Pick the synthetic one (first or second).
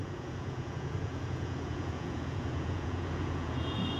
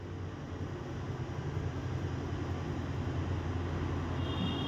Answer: first